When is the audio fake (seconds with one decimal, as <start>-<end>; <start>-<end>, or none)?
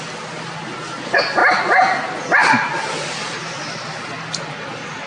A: none